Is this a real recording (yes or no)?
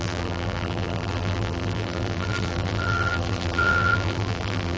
no